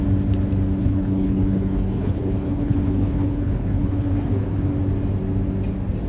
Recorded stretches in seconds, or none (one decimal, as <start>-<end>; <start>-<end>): 0.0-0.8; 4.1-6.1